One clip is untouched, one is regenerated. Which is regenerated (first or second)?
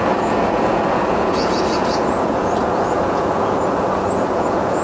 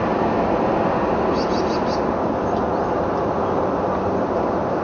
first